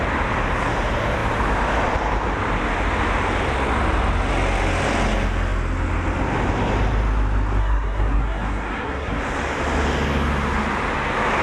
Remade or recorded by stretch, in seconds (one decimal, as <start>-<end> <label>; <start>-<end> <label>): 0.0-7.6 recorded; 7.6-9.2 remade; 9.2-11.4 recorded